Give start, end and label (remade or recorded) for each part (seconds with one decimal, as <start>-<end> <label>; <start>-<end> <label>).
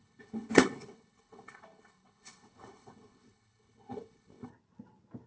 0.0-4.5 remade; 4.5-5.3 recorded